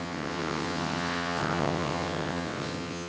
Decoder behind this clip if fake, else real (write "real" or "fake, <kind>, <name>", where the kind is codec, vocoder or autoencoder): fake, vocoder, WaveNeXt